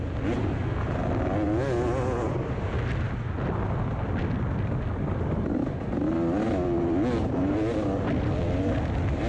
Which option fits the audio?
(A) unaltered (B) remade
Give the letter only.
A